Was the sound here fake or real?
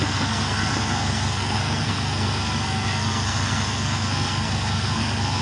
fake